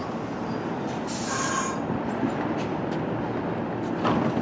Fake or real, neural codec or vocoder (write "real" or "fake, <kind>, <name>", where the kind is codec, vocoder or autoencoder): real